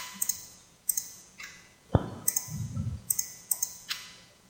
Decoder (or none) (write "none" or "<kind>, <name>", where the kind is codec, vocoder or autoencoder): vocoder, Vocos